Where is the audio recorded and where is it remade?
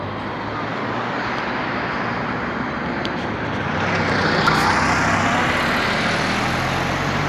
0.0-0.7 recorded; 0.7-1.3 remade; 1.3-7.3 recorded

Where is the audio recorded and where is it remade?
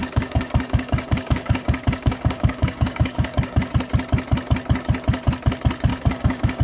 0.0-3.7 remade; 3.7-5.9 recorded; 5.9-6.6 remade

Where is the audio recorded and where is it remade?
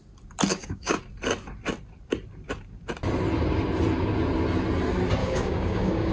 0.0-0.5 recorded; 0.5-1.0 remade; 1.0-5.2 recorded; 5.2-6.1 remade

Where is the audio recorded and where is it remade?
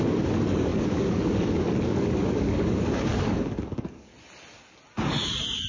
0.0-4.1 remade; 4.1-5.7 recorded